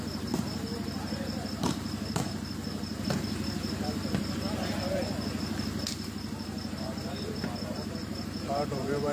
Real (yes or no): no